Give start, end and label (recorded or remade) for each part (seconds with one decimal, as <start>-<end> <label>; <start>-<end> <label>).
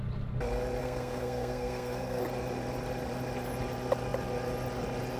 0.0-0.8 recorded; 0.8-2.2 remade; 2.2-5.2 recorded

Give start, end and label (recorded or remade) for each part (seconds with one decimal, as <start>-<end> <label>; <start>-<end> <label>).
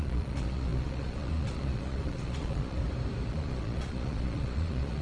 0.0-2.8 remade; 2.8-3.3 recorded; 3.3-5.0 remade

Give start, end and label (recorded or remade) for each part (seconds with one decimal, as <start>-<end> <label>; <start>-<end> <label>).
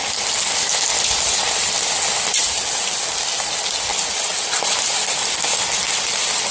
0.0-6.5 recorded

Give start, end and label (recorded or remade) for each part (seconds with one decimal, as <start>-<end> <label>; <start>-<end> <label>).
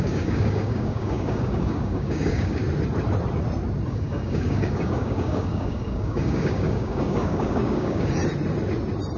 0.0-2.6 remade; 2.6-3.9 recorded; 3.9-8.2 remade; 8.2-9.2 recorded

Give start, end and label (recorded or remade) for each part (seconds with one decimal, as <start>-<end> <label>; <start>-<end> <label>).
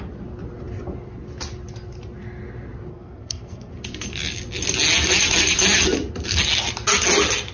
0.0-2.9 recorded; 2.9-3.7 remade; 3.7-7.5 recorded